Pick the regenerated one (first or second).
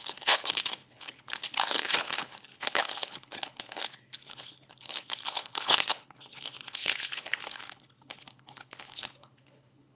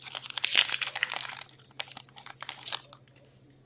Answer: first